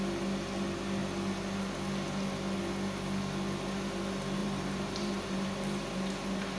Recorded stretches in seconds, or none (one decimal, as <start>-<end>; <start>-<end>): 0.0-4.4